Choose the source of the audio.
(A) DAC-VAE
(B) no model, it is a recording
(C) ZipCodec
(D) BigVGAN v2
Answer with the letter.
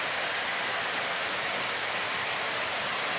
D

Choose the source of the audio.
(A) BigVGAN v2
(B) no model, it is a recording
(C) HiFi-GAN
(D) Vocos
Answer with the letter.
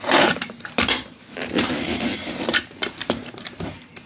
A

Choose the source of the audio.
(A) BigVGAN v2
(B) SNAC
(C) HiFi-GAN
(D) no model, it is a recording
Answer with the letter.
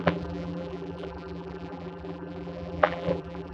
A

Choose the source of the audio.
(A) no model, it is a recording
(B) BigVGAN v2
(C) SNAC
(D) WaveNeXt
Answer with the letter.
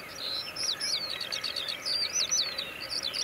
B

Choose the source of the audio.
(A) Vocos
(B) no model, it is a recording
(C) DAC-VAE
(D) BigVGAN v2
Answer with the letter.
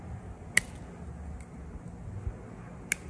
B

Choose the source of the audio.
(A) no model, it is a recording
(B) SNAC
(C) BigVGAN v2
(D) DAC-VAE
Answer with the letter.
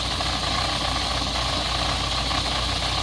A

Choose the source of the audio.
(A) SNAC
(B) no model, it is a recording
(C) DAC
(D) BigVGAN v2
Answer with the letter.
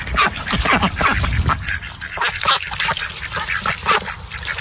D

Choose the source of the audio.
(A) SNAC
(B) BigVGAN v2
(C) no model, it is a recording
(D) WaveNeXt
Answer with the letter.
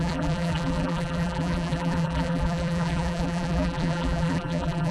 B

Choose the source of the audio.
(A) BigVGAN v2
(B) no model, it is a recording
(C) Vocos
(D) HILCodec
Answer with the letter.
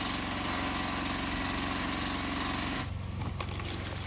B